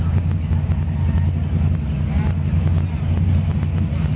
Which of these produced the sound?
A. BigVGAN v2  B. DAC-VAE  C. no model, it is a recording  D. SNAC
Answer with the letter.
C